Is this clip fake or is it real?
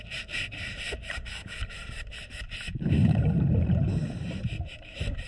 fake